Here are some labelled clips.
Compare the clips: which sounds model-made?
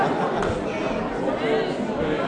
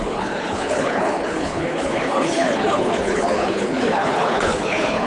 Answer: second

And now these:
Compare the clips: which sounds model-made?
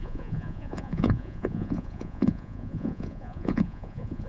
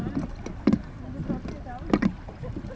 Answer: first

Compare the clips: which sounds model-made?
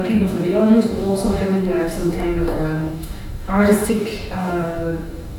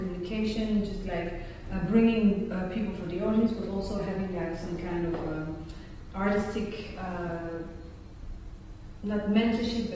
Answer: first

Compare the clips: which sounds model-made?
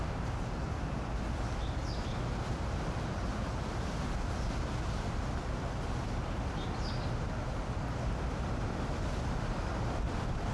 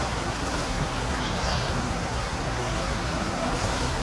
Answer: second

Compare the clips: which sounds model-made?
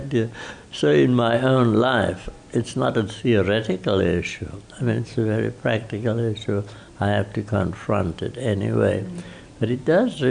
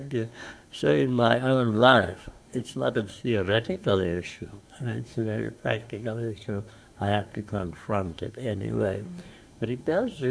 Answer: second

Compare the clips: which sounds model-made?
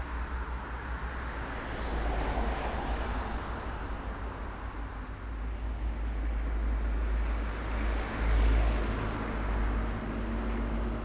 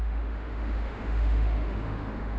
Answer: second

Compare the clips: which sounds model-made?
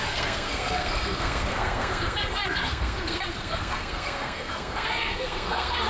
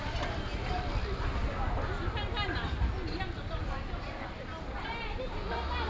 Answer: first